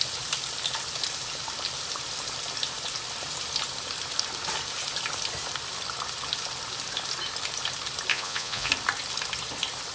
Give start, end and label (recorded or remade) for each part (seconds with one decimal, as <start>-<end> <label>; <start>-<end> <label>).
0.0-8.1 recorded; 8.1-8.7 remade; 8.7-9.9 recorded